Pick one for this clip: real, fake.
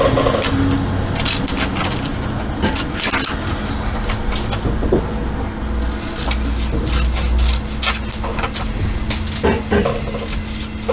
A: real